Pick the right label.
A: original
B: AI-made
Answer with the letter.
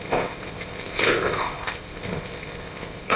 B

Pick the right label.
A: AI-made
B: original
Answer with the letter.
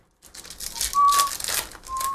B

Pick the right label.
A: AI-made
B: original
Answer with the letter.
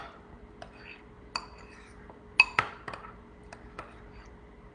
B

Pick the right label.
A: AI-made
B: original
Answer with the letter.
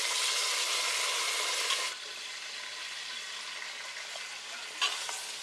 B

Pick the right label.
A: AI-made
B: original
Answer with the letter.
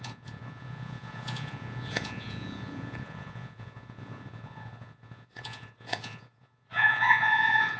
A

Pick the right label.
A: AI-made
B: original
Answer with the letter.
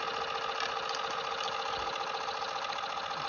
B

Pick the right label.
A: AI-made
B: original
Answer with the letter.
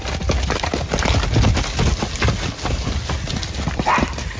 B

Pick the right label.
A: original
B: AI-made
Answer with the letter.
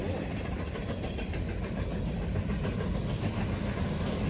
A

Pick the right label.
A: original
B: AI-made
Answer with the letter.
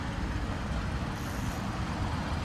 A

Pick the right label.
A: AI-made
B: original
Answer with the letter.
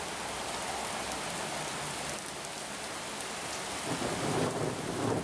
B